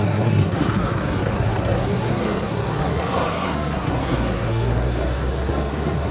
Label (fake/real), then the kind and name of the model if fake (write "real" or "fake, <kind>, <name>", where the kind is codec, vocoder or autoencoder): fake, codec, SNAC